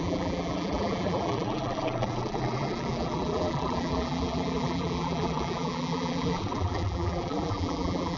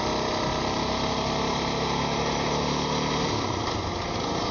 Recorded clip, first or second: second